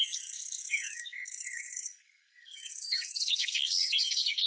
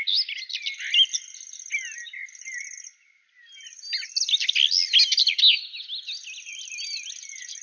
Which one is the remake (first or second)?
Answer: first